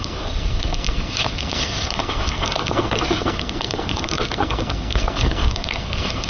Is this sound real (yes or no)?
no